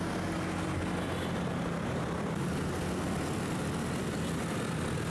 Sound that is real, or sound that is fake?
real